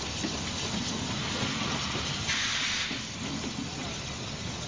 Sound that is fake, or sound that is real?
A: real